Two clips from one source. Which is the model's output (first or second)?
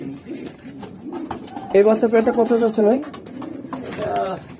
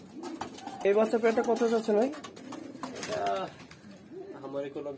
first